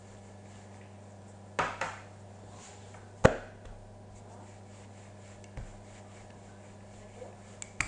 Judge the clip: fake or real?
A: real